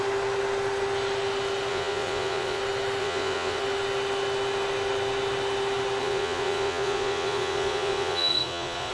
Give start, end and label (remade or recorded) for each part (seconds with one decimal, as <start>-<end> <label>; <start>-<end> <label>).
0.0-1.7 recorded; 1.7-2.6 remade; 2.6-3.0 recorded; 3.0-3.6 remade; 3.6-6.0 recorded; 6.0-8.9 remade